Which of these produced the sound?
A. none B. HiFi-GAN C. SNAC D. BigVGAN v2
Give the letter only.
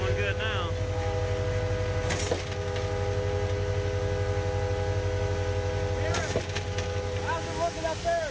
A